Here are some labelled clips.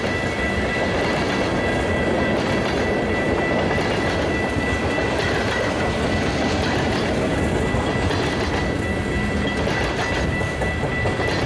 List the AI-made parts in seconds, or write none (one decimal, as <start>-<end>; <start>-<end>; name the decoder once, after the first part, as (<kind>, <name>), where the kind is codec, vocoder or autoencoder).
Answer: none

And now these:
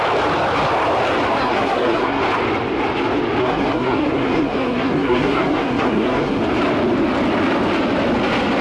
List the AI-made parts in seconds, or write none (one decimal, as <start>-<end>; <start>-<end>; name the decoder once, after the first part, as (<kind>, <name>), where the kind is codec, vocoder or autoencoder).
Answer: 1.4-2.2 (codec, SNAC); 3.4-6.4

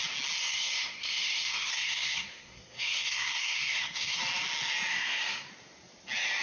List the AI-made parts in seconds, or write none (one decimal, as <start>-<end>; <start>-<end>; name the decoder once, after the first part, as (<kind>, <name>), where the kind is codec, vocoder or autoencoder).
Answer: 0.4-4.2 (codec, SNAC); 4.9-5.5

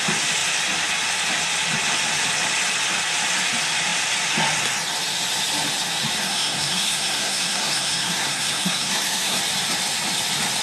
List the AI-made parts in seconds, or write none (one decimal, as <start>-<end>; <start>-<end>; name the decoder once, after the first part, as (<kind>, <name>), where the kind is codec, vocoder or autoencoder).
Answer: 6.2-9.4 (codec, SNAC)

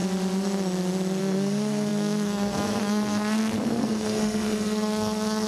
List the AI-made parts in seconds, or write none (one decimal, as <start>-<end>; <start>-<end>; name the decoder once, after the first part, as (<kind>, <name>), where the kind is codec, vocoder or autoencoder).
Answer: 1.2-5.5 (codec, SNAC)

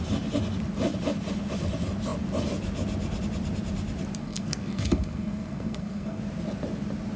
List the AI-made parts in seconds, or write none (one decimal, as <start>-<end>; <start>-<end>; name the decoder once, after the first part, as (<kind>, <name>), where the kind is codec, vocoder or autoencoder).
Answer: 4.2-6.2 (codec, SNAC)

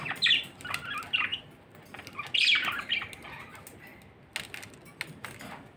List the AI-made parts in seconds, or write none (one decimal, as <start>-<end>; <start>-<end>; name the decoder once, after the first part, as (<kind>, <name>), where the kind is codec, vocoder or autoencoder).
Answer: none

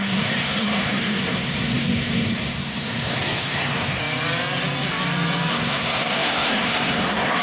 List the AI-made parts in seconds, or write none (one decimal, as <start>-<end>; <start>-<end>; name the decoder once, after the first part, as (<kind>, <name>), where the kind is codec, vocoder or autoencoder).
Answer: 0.0-4.0 (codec, SNAC); 5.5-7.4